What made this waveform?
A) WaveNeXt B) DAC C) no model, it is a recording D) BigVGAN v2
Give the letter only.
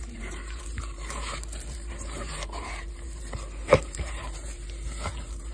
D